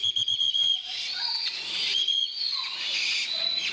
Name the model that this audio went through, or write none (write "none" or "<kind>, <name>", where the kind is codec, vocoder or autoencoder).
vocoder, Vocos